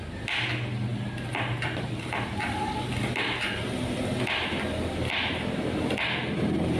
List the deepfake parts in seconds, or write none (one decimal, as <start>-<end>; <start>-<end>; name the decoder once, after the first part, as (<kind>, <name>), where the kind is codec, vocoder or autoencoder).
none